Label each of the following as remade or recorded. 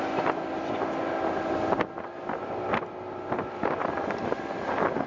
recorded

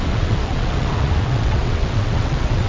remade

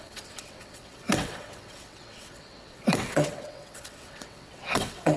remade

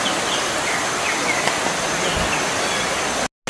recorded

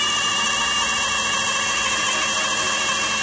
recorded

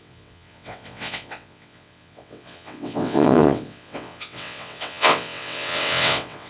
remade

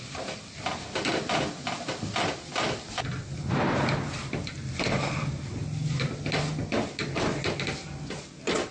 recorded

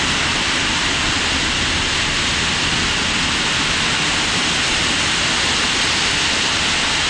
recorded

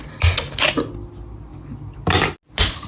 recorded